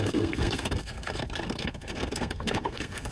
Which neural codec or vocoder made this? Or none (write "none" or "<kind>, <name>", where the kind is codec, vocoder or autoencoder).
codec, SNAC